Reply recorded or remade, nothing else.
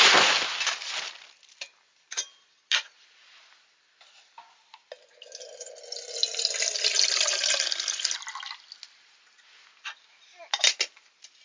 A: recorded